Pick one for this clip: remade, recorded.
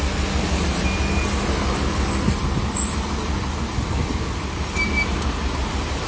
recorded